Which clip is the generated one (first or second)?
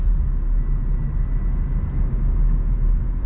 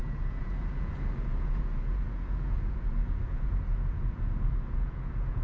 second